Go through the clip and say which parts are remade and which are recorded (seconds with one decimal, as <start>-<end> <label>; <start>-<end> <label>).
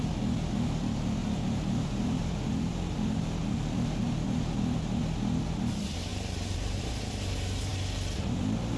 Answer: 0.0-1.2 recorded; 1.2-4.0 remade; 4.0-6.1 recorded; 6.1-6.8 remade; 6.8-8.8 recorded